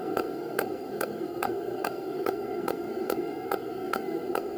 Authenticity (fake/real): fake